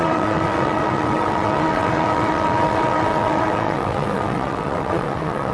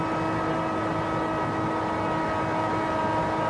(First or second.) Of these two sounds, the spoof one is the first